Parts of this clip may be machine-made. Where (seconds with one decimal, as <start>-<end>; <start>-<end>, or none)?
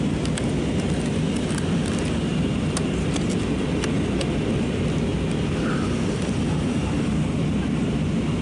none